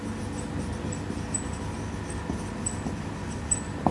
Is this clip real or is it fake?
real